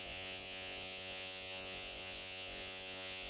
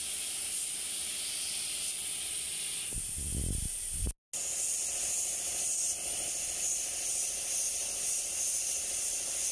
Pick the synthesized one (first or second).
first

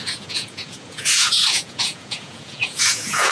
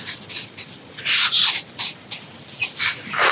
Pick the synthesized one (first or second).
first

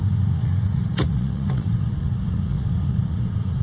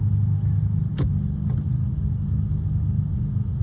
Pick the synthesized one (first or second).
first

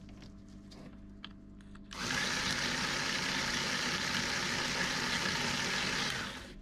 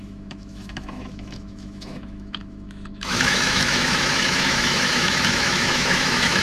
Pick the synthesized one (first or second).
second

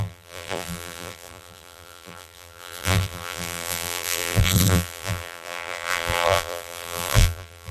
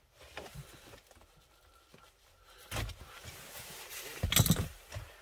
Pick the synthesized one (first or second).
first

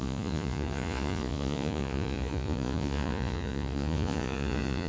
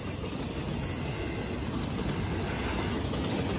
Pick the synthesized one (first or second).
first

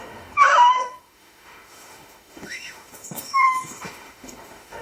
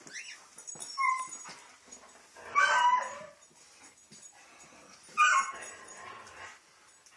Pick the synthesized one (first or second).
first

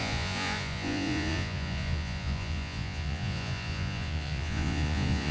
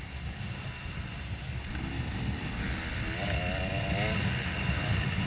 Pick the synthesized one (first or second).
first